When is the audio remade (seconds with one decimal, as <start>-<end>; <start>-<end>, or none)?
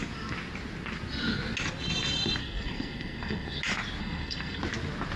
2.4-3.6; 4.0-4.6